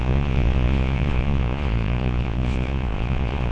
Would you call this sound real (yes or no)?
no